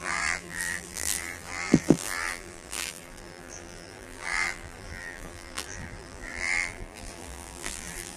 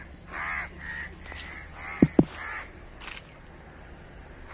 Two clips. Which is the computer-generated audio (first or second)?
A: first